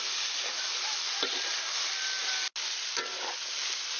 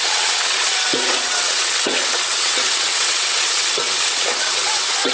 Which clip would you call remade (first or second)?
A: second